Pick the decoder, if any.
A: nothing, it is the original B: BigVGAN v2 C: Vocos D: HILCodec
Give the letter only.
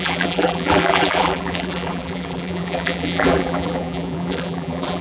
B